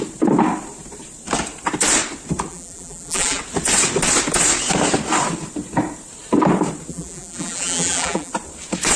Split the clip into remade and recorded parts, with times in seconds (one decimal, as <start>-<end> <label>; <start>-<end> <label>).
0.0-2.5 recorded; 2.5-3.4 remade; 3.4-6.9 recorded; 6.9-8.3 remade; 8.3-9.0 recorded